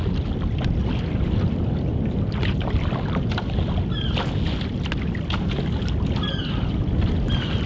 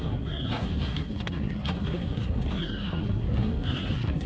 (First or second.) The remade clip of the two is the second